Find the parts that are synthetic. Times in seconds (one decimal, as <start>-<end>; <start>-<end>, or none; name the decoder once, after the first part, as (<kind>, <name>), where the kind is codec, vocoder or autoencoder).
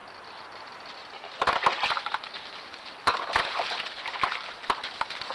none